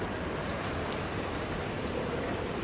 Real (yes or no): no